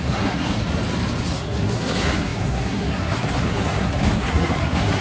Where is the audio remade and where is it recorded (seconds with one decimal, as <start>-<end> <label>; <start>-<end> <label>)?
0.0-0.6 remade; 0.6-1.2 recorded; 1.2-5.0 remade